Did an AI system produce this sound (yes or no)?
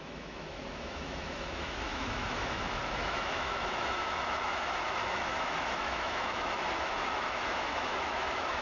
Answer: yes